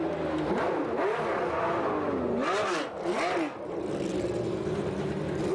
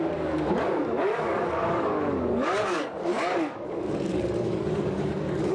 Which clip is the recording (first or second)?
first